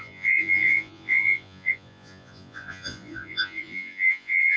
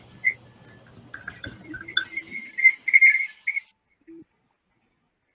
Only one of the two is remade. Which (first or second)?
first